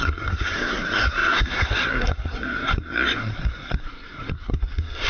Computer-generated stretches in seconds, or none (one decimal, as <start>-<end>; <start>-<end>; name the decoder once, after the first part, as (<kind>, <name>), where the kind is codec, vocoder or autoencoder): 0.0-5.1 (codec, SNAC)